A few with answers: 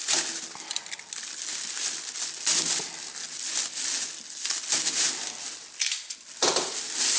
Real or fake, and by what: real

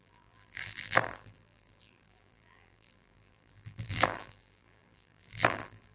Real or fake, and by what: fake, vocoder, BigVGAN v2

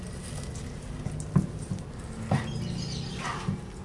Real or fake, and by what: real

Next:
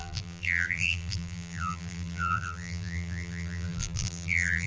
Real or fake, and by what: fake, vocoder, BigVGAN v2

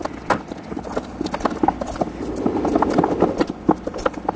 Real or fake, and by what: real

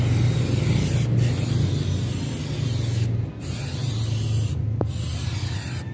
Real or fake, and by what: real